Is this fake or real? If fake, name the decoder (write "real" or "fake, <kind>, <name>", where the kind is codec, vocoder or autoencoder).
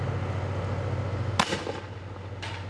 real